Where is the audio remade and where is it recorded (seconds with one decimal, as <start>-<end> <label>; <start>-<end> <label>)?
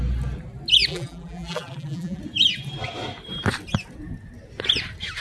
0.0-0.9 recorded; 0.9-2.2 remade; 2.2-5.2 recorded